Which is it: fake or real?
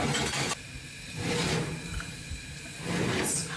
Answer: real